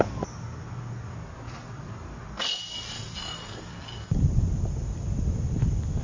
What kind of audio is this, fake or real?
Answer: real